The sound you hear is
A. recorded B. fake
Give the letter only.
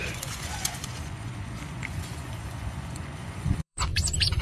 B